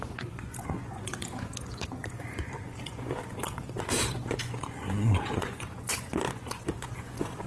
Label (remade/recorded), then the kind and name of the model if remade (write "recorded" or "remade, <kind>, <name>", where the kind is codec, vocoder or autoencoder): remade, vocoder, Vocos